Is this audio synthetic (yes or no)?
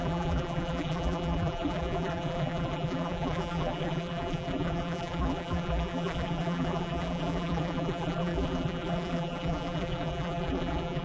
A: yes